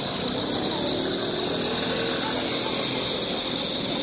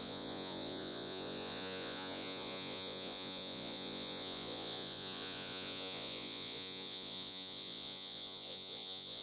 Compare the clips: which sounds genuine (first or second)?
first